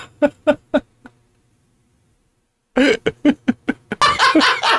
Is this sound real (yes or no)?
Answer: yes